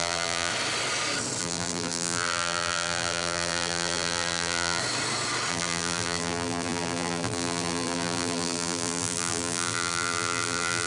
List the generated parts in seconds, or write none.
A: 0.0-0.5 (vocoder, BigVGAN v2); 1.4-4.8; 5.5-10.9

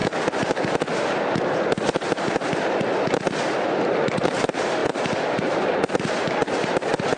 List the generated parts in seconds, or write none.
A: 4.8-5.7 (vocoder, BigVGAN v2)

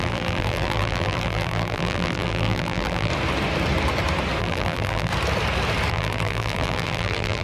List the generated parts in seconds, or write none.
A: 0.0-3.1 (vocoder, BigVGAN v2); 4.4-5.1; 5.9-7.4

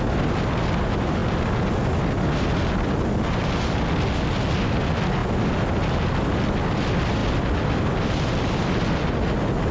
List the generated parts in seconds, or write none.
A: 7.2-7.8 (vocoder, BigVGAN v2)

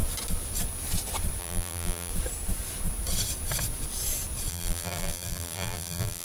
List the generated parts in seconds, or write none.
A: 1.4-2.1 (vocoder, BigVGAN v2); 4.5-6.2

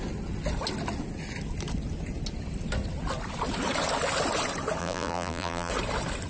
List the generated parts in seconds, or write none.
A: 4.8-5.7 (vocoder, BigVGAN v2)